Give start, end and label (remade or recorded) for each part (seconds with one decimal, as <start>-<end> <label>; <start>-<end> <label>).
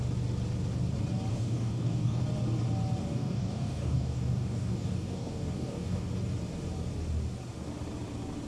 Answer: 0.0-1.3 recorded; 1.3-2.2 remade; 2.2-3.0 recorded; 3.0-6.1 remade; 6.1-8.5 recorded